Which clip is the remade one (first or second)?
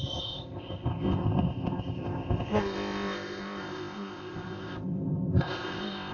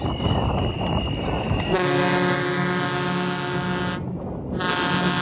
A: first